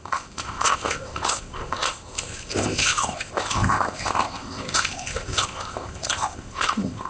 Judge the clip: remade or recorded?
remade